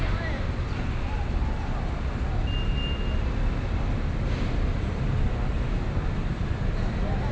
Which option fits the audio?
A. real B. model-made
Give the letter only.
A